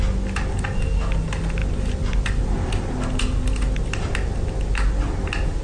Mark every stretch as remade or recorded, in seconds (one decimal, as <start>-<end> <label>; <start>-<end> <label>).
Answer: 0.0-5.6 recorded